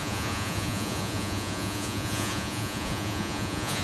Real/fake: fake